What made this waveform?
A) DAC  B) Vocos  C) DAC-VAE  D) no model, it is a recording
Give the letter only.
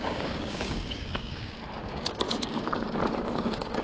A